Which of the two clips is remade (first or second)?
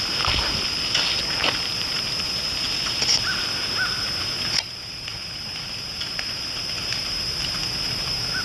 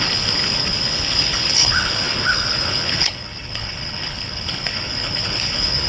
second